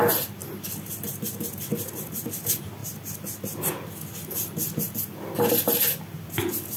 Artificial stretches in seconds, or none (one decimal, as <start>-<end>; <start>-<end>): none